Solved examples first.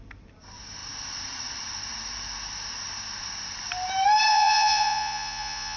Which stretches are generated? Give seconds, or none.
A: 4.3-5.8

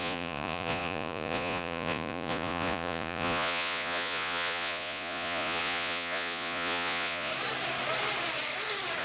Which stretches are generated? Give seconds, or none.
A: 0.0-7.3

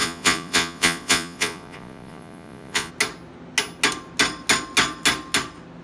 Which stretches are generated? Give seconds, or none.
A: 0.0-2.9

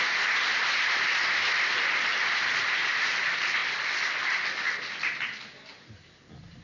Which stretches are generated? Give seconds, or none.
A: none

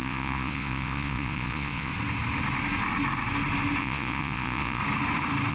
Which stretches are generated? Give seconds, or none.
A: 0.0-1.9; 3.8-4.8